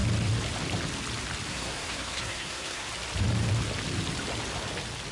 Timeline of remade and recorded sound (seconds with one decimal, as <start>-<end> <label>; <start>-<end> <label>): 0.0-1.5 recorded; 1.5-2.9 remade; 2.9-5.1 recorded